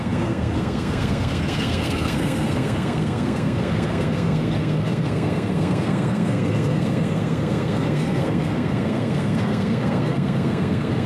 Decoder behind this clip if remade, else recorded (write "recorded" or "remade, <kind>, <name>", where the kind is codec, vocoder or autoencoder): remade, codec, SNAC